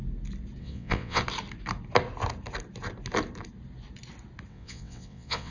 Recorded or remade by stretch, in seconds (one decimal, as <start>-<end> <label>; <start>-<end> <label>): 0.0-0.6 recorded; 0.6-1.2 remade; 1.2-4.5 recorded; 4.5-5.5 remade